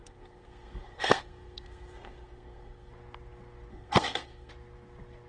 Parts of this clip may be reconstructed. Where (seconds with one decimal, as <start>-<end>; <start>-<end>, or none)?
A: 0.0-2.9; 3.7-4.5